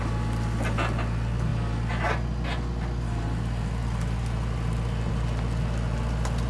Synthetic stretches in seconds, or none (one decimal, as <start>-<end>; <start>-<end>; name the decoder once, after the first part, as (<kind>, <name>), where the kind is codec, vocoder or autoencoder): none